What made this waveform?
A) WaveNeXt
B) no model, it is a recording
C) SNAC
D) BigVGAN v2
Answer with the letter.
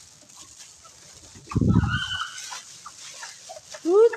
B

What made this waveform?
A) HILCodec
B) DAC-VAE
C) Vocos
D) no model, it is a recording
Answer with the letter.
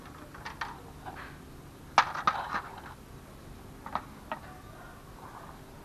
D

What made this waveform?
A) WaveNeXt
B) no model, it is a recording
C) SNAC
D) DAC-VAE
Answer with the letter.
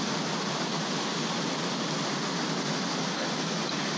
B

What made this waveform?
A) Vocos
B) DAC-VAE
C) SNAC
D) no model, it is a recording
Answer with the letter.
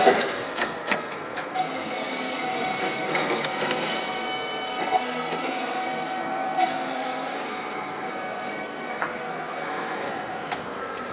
C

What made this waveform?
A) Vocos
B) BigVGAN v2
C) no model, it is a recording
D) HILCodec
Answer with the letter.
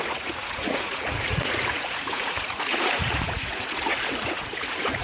A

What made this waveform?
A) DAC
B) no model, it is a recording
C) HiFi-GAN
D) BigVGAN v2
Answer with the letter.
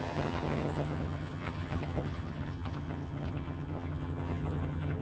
C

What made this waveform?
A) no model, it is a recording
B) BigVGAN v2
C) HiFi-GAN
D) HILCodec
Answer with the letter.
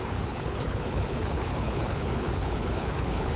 D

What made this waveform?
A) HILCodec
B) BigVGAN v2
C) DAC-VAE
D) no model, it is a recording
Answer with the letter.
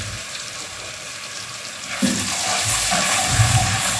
B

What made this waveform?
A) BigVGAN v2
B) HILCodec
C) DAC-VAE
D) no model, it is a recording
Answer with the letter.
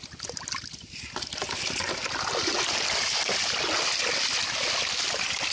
D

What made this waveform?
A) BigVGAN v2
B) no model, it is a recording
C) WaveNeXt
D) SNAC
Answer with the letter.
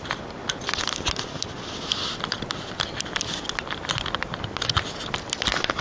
B